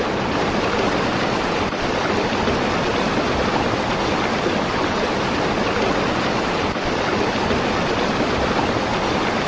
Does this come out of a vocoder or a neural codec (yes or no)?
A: no